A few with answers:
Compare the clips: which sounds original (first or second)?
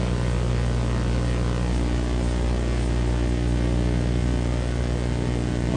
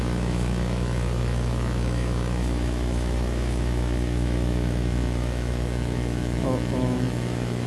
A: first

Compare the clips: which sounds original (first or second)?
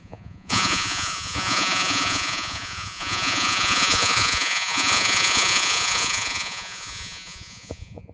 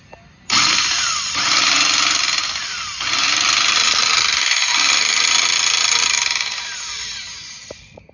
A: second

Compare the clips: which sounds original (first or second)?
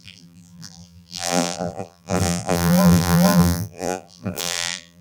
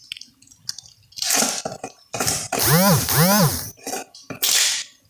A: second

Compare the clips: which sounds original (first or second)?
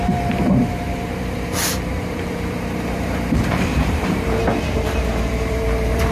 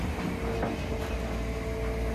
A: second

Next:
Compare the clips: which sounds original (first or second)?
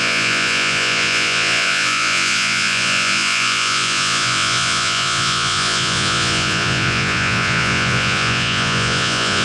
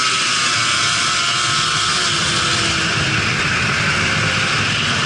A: second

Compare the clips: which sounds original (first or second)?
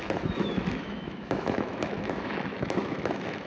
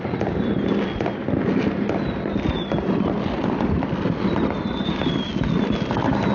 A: second